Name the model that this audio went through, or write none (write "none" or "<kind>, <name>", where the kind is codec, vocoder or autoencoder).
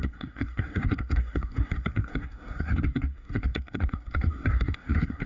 codec, SNAC